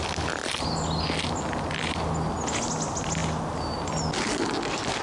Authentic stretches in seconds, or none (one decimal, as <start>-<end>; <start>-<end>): 0.0-5.0